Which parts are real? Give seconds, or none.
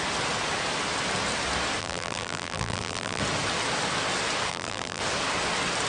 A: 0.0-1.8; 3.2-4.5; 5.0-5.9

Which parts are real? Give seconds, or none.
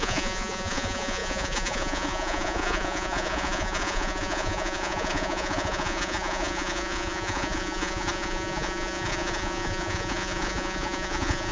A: none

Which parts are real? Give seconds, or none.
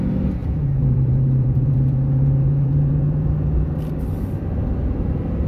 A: 0.0-0.4; 3.7-5.5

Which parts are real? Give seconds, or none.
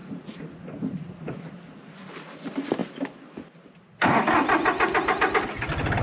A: 1.5-6.0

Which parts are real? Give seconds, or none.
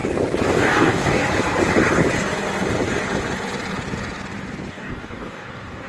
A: 0.0-0.5; 1.2-4.7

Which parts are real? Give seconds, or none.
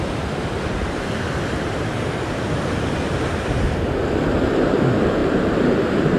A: 0.0-5.2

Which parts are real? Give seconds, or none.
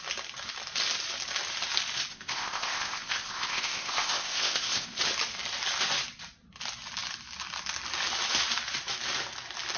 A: 0.0-2.1; 5.0-9.8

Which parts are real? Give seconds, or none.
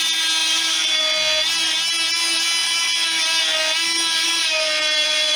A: 0.0-0.4; 1.0-4.4